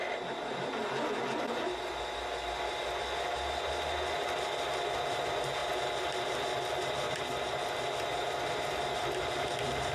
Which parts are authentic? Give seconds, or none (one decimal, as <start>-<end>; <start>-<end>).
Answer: 0.0-9.9